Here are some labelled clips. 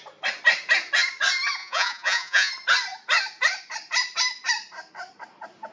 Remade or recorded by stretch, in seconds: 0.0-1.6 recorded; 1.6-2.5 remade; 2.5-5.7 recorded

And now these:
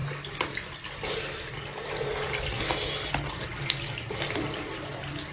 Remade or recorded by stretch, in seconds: 0.0-5.3 recorded

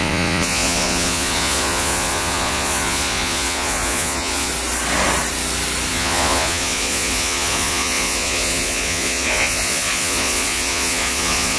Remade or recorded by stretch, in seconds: 0.0-4.5 remade; 4.5-5.9 recorded; 5.9-11.6 remade